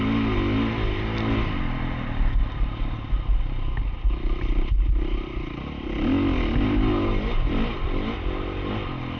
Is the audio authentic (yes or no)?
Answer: yes